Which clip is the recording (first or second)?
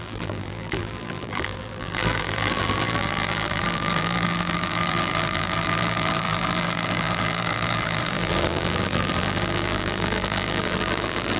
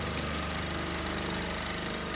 second